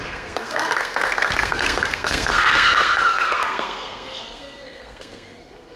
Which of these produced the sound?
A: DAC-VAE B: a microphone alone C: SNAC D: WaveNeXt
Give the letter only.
C